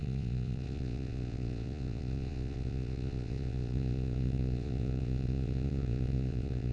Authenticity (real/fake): fake